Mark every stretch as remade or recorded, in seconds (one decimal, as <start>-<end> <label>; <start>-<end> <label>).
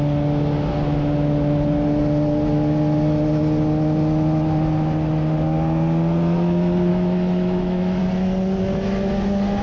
0.0-6.9 recorded; 6.9-8.0 remade; 8.0-9.6 recorded